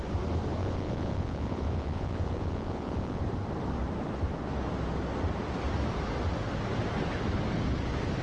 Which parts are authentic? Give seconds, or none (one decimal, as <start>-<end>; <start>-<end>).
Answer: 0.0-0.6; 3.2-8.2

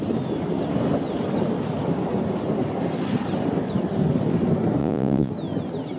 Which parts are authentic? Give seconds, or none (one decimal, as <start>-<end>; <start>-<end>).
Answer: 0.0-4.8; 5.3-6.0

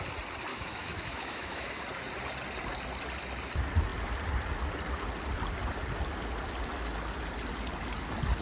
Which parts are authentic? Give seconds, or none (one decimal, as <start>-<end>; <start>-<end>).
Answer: 0.0-0.5; 1.8-8.4

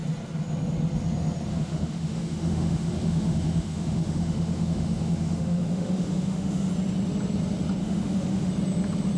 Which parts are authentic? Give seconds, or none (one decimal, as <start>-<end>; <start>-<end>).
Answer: 0.0-1.5; 6.7-7.8; 8.5-9.2

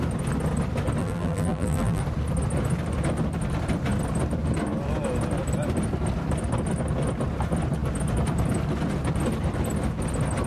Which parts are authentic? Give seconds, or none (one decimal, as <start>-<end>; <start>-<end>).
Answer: 0.0-1.0; 2.0-10.5

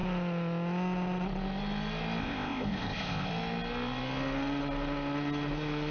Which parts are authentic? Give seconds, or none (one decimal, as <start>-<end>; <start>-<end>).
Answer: 0.0-2.2; 3.3-5.9